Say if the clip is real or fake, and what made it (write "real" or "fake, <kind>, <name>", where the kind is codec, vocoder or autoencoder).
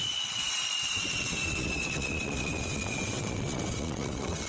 fake, vocoder, WaveNeXt